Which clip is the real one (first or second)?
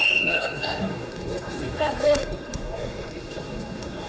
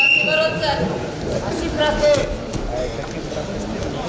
second